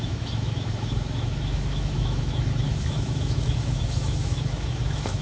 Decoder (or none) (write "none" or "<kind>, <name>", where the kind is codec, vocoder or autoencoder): autoencoder, DAC-VAE